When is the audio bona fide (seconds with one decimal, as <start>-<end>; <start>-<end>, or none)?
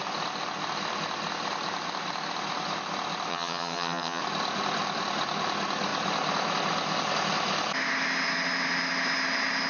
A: 0.0-3.3; 4.2-9.7